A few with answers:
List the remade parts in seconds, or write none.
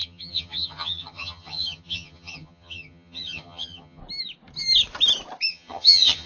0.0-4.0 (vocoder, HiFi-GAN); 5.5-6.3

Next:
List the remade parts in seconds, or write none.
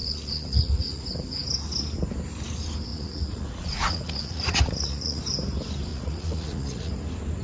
0.0-1.1 (vocoder, Vocos); 2.9-5.2; 5.9-6.9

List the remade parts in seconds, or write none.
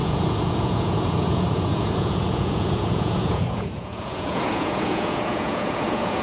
0.0-6.2 (vocoder, Vocos)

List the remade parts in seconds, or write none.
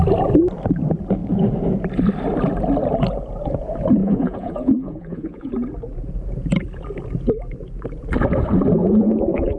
4.0-5.5 (vocoder, Vocos); 8.8-9.6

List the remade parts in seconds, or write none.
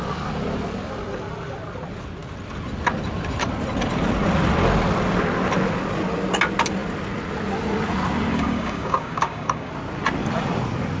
8.3-9.7 (codec, DAC)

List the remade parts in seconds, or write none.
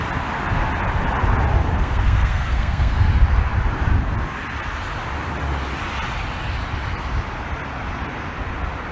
1.7-3.1 (codec, SNAC)